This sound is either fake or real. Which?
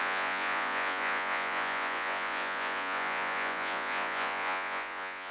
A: fake